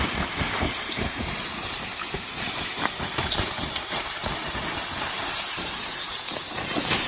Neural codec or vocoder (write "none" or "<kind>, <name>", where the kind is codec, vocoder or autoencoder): vocoder, BigVGAN v2